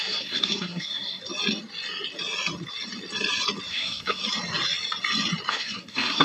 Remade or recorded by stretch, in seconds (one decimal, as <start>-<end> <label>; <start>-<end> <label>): 0.0-1.2 remade; 1.2-3.7 recorded; 3.7-4.2 remade; 4.2-5.5 recorded; 5.5-6.2 remade